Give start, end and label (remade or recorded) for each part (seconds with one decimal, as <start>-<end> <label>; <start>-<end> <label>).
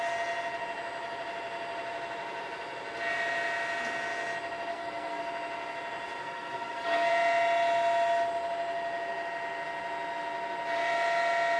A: 0.0-4.7 recorded; 4.7-5.2 remade; 5.2-6.2 recorded; 6.2-7.1 remade; 7.1-11.6 recorded